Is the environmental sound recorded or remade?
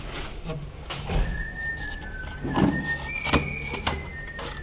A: recorded